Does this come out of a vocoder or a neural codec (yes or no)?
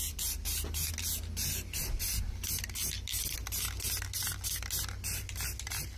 no